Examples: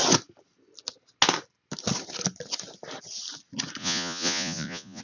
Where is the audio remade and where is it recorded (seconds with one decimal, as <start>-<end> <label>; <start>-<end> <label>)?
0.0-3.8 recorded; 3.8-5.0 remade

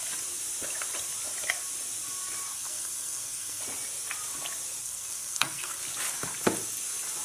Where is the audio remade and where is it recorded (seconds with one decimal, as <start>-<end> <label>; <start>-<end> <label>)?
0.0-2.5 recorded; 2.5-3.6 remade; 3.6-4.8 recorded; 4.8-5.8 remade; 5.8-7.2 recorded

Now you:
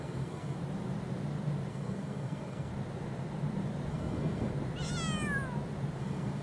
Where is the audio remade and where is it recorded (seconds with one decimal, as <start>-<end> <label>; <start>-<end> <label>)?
0.0-0.6 remade; 0.6-1.7 recorded; 1.7-2.7 remade; 2.7-3.9 recorded; 3.9-4.5 remade; 4.5-6.0 recorded; 6.0-6.4 remade

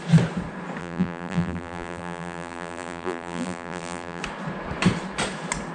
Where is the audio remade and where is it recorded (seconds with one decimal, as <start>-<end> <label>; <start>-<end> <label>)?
0.0-0.8 recorded; 0.8-4.2 remade; 4.2-5.7 recorded